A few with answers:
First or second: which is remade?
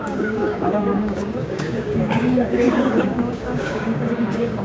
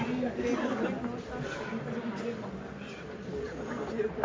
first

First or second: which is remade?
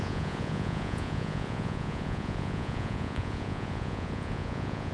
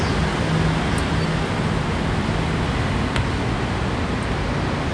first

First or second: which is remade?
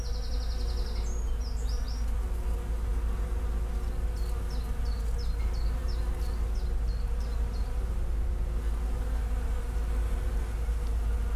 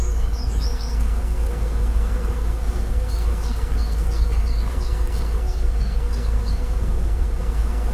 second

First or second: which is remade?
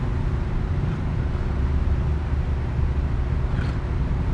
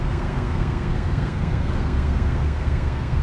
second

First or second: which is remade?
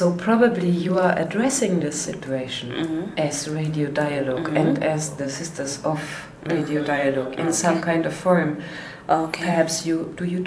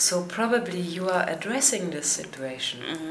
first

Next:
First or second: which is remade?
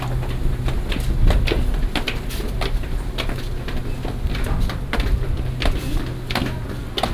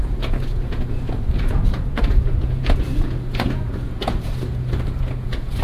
second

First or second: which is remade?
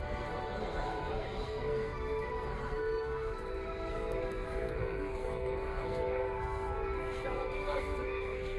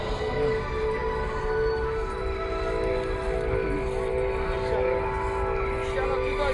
first